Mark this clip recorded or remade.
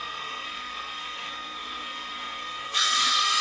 remade